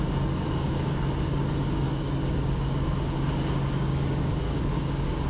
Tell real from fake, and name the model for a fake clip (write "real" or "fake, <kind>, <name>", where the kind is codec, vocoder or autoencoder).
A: fake, codec, DAC